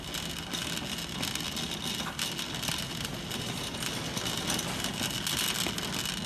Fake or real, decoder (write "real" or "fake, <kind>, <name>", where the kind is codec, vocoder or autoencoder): real